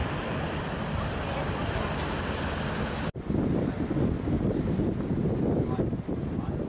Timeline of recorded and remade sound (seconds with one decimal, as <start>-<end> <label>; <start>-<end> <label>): 0.0-0.6 remade; 0.6-6.7 recorded